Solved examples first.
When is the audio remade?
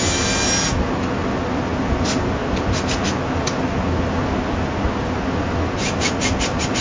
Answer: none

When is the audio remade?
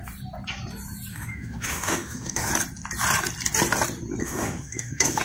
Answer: 1.1-2.5 (autoencoder, DAC-VAE); 4.2-5.2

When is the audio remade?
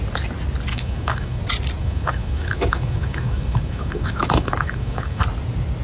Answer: 0.7-1.4 (autoencoder, DAC-VAE); 1.8-5.2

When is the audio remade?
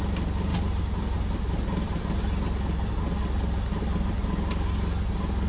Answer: none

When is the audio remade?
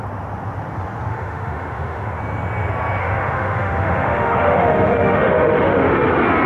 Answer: 1.1-2.2 (autoencoder, DAC-VAE); 3.0-6.1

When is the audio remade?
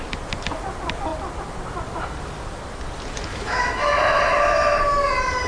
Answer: 3.3-3.9 (autoencoder, DAC-VAE)